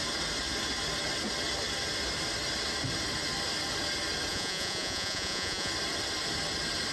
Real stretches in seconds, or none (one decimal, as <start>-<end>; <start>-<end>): 0.0-4.3; 5.7-6.9